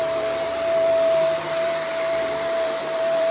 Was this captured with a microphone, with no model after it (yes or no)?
no